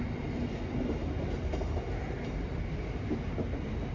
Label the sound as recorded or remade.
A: recorded